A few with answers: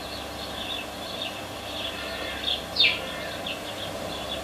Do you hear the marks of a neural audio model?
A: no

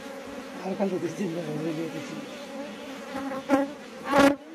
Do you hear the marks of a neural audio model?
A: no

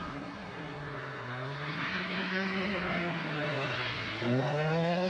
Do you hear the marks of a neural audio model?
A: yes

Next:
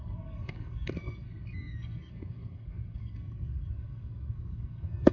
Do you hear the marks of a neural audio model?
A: yes